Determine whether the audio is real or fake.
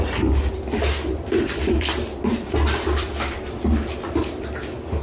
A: fake